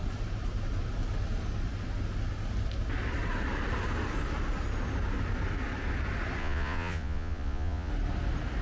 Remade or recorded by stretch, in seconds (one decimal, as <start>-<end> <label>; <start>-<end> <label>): 0.0-6.4 recorded; 6.4-7.9 remade; 7.9-8.6 recorded